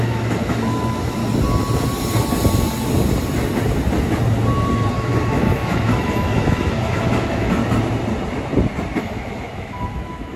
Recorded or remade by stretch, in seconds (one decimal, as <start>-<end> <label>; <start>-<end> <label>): 0.0-1.2 remade; 1.2-4.9 recorded; 4.9-7.6 remade; 7.6-9.0 recorded; 9.0-10.4 remade